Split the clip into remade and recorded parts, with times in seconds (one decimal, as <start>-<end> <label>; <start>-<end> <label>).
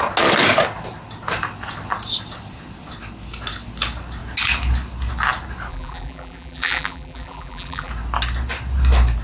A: 0.0-5.7 recorded; 5.7-7.9 remade; 7.9-9.2 recorded